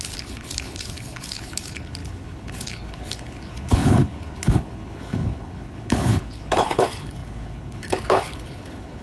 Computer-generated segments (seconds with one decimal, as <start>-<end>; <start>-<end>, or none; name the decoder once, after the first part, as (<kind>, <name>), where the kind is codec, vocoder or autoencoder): 0.0-9.0 (codec, HILCodec)